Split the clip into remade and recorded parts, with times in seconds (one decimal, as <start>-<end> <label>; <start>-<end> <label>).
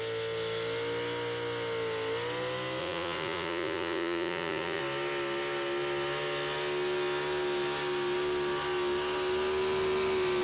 0.0-2.8 recorded; 2.8-4.8 remade; 4.8-10.4 recorded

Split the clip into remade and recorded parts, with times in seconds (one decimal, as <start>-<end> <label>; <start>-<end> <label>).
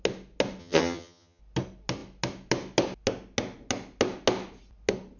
0.0-0.6 recorded; 0.6-1.4 remade; 1.4-5.2 recorded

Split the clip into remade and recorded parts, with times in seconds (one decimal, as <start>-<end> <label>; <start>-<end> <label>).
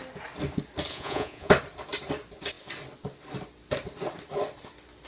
0.0-0.9 recorded; 0.9-1.5 remade; 1.5-5.1 recorded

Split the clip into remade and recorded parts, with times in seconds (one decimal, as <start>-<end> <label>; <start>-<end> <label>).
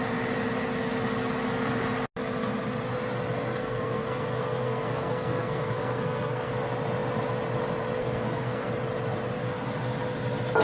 0.0-3.6 recorded; 3.6-6.5 remade; 6.5-8.0 recorded; 8.0-8.7 remade; 8.7-10.6 recorded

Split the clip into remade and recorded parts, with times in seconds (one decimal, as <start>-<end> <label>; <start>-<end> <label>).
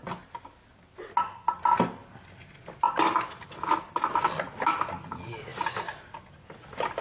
0.0-7.0 recorded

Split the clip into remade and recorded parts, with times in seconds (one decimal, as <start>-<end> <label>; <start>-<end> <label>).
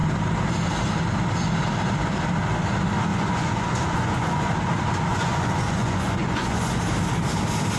0.0-3.1 recorded; 3.1-4.5 remade; 4.5-5.1 recorded; 5.1-6.8 remade; 6.8-7.8 recorded